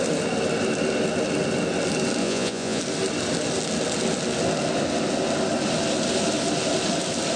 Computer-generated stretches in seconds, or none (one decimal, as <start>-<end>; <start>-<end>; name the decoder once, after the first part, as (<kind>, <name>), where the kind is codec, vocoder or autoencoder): 2.2-2.8 (vocoder, Vocos)